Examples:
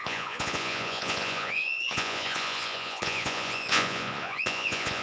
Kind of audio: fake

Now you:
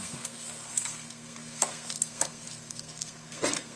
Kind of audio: fake